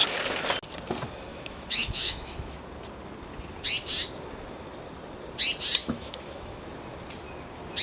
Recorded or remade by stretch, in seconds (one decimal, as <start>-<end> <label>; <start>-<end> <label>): 0.0-1.3 recorded; 1.3-2.6 remade; 2.6-5.8 recorded; 5.8-6.7 remade; 6.7-7.8 recorded